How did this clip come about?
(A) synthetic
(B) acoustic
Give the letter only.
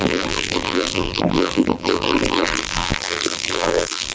A